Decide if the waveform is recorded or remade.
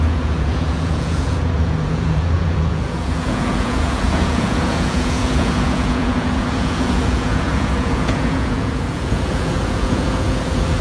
remade